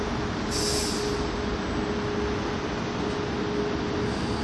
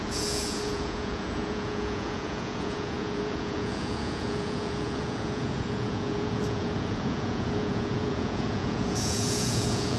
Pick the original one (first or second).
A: first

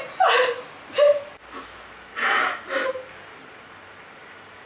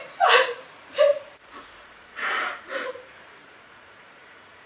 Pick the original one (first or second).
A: first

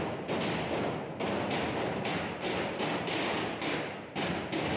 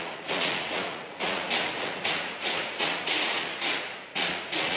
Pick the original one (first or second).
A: first